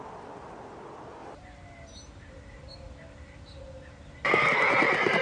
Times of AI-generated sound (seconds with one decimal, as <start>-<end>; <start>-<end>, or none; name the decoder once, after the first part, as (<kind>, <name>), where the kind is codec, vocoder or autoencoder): 1.2-4.3 (vocoder, BigVGAN v2)